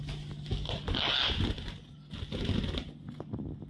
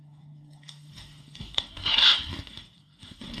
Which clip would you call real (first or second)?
first